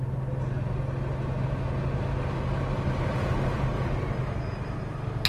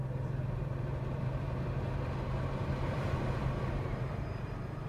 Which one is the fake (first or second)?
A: second